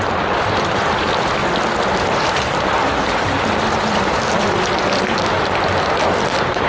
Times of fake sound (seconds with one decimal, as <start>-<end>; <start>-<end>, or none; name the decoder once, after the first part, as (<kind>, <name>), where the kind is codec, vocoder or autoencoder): 0.0-1.4 (vocoder, BigVGAN v2); 5.4-6.7